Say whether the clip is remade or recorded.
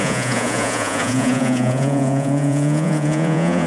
remade